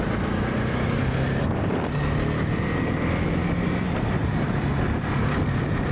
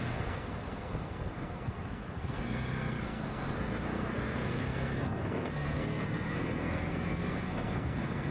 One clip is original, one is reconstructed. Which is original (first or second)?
first